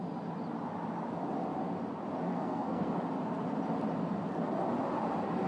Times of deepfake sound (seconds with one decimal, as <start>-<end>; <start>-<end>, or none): 2.3-3.0